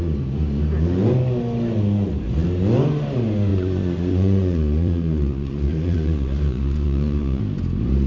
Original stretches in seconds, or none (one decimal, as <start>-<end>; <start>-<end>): 0.0-3.5; 7.4-8.1